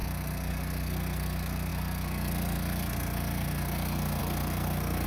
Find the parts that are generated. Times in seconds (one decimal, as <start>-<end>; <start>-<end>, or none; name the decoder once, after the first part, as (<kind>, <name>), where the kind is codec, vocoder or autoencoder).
0.0-5.1 (codec, SNAC)